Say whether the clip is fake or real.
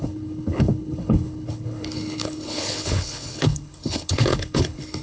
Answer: fake